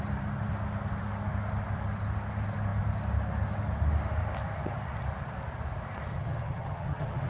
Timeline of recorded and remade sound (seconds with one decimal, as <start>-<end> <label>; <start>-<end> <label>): 0.0-6.1 recorded; 6.1-7.3 remade